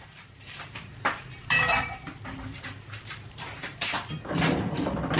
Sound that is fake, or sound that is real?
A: fake